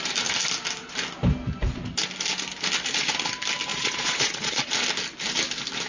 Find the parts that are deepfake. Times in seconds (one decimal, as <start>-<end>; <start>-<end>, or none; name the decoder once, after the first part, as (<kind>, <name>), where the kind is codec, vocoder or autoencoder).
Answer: 3.7-4.7 (vocoder, Vocos)